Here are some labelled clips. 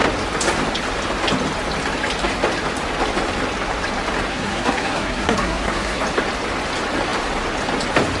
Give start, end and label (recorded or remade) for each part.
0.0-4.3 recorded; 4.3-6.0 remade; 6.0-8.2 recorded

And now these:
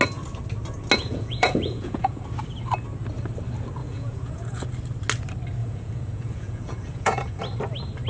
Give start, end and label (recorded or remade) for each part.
0.0-1.0 recorded; 1.0-2.2 remade; 2.2-3.8 recorded; 3.8-4.7 remade; 4.7-5.6 recorded; 5.6-7.4 remade; 7.4-8.1 recorded

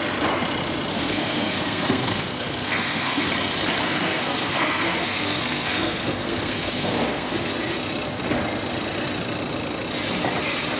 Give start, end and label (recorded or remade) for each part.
0.0-0.9 recorded; 0.9-3.3 remade; 3.3-3.8 recorded; 3.8-7.5 remade; 7.5-10.8 recorded

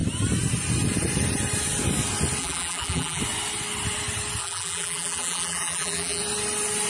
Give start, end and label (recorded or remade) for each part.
0.0-2.4 recorded; 2.4-3.2 remade; 3.2-4.4 recorded; 4.4-6.2 remade; 6.2-6.9 recorded

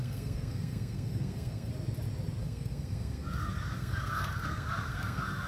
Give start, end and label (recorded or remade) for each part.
0.0-1.7 remade; 1.7-2.4 recorded; 2.4-5.5 remade